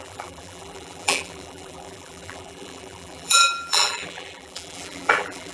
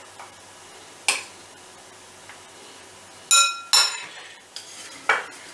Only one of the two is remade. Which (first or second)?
first